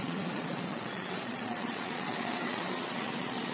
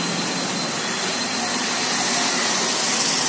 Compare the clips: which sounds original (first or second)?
second